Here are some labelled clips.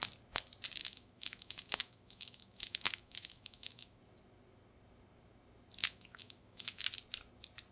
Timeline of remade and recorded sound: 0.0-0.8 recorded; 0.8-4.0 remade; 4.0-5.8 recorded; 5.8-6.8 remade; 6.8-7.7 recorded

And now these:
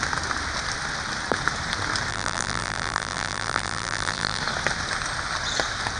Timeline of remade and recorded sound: 0.0-2.1 recorded; 2.1-4.4 remade; 4.4-6.0 recorded